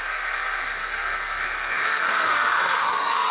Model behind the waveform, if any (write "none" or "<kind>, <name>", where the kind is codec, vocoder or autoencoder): codec, SNAC